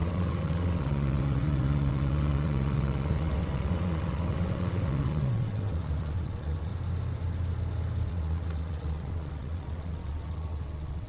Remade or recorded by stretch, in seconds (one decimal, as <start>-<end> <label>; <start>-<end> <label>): 0.0-6.7 remade; 6.7-8.1 recorded; 8.1-11.1 remade